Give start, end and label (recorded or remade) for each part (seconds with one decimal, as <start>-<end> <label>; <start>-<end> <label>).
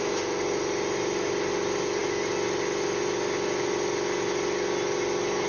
0.0-5.5 recorded